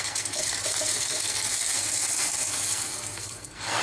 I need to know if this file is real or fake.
fake